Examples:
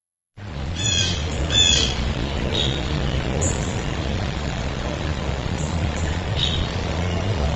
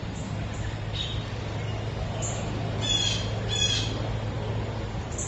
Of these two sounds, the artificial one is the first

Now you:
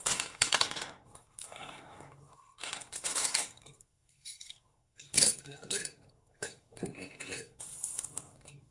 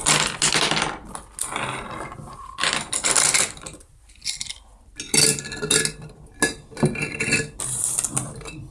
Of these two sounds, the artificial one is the first